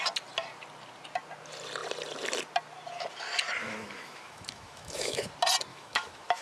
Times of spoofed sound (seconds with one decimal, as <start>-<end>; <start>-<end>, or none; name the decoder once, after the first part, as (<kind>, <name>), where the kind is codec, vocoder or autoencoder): 3.6-5.3 (autoencoder, DAC-VAE); 5.7-6.4